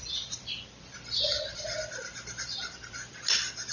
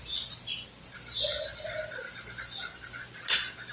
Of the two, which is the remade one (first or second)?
first